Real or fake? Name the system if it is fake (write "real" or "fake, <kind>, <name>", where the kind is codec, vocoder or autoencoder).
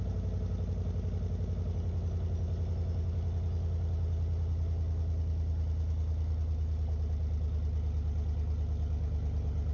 real